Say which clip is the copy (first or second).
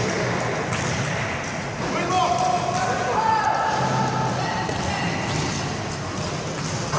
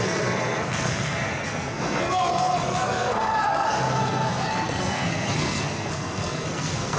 second